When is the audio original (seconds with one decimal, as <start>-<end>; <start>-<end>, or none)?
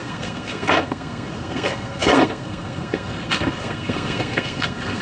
none